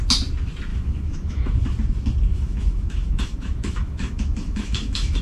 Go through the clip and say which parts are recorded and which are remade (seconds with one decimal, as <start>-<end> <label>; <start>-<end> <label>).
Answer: 0.0-0.7 recorded; 0.7-1.6 remade; 1.6-2.3 recorded; 2.3-5.2 remade